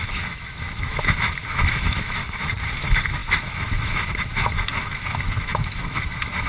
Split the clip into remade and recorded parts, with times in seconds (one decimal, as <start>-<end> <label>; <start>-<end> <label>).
0.0-2.2 remade; 2.2-2.8 recorded; 2.8-6.5 remade